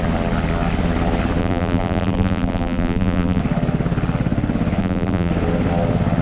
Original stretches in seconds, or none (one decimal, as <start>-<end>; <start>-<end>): 0.0-1.4; 3.4-4.8; 5.3-6.2